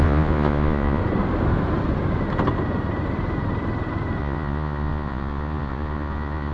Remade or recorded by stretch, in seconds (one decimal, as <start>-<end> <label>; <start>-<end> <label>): 0.0-1.0 remade; 1.0-4.2 recorded; 4.2-6.5 remade